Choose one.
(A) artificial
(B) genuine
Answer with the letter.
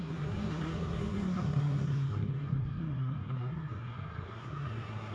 A